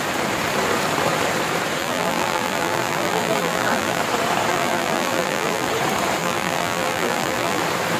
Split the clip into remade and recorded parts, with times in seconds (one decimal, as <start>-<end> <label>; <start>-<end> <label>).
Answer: 0.0-1.8 recorded; 1.8-4.0 remade; 4.0-4.5 recorded; 4.5-5.7 remade; 5.7-6.2 recorded; 6.2-7.6 remade; 7.6-8.0 recorded